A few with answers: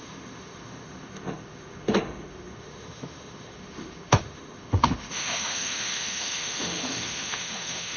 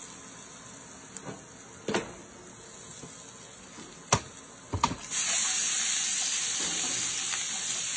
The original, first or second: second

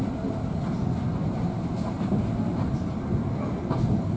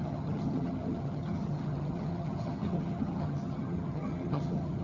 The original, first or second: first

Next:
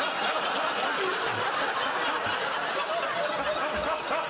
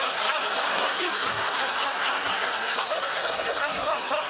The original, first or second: first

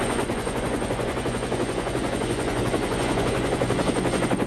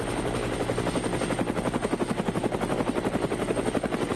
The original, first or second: second